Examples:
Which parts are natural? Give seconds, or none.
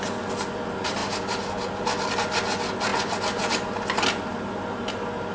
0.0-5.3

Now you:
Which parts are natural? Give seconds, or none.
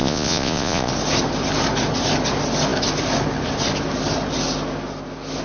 0.9-5.4